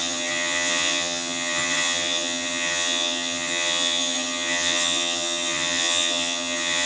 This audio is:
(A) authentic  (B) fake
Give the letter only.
B